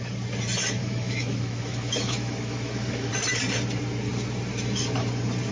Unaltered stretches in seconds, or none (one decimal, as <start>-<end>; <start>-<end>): 0.0-0.8; 3.1-5.5